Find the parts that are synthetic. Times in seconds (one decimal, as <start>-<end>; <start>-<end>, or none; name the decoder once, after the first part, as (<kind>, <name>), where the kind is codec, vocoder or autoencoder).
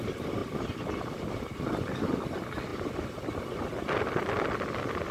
none